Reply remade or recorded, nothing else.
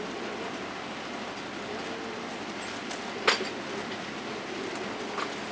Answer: recorded